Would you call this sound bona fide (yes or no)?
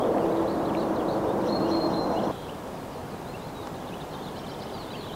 no